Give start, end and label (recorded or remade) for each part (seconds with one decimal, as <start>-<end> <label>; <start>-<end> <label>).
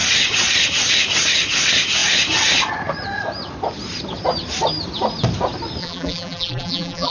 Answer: 0.0-5.8 recorded; 5.8-7.1 remade